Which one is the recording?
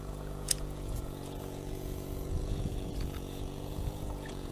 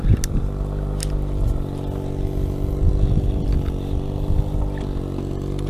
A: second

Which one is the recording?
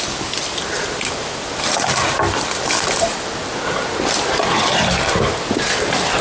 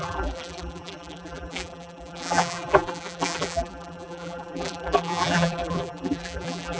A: first